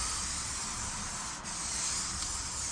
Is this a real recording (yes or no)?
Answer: no